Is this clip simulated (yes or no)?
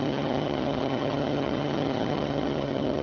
yes